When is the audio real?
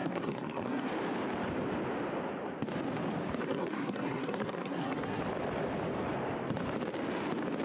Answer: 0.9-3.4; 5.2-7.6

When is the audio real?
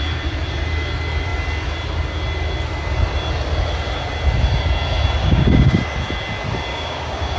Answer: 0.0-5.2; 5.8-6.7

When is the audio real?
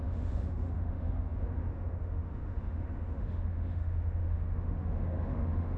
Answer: none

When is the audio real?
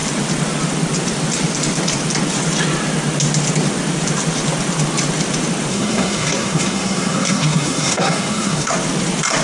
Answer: 0.0-5.7; 8.7-9.4